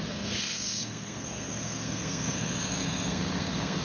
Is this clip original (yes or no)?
no